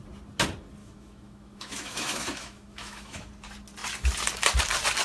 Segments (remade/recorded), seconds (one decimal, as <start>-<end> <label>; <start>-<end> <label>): 0.0-0.8 recorded; 0.8-3.3 remade; 3.3-5.0 recorded